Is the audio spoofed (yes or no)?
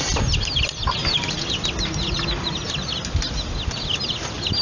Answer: no